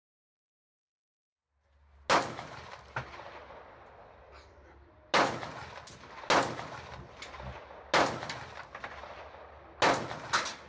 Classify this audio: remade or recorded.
recorded